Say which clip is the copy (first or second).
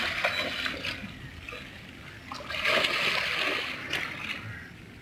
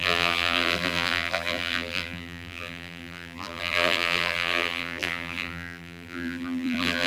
second